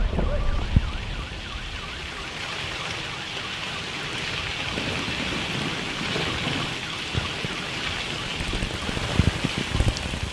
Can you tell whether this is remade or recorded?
recorded